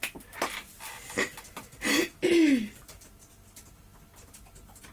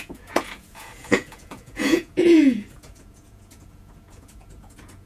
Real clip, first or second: first